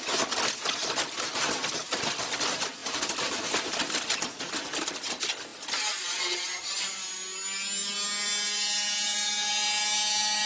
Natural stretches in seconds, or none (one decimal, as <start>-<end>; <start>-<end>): 0.0-10.5